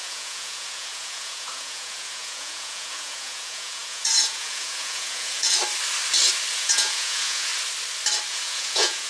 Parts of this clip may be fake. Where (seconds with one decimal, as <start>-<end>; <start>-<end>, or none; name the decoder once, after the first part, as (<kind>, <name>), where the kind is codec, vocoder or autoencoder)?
0.0-5.6 (vocoder, Vocos); 6.5-7.5; 8.3-9.1